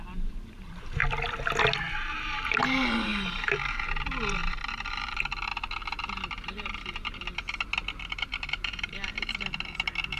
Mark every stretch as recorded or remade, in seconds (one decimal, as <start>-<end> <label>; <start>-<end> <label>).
0.0-1.0 remade; 1.0-2.5 recorded; 2.5-5.5 remade; 5.5-8.0 recorded; 8.0-10.2 remade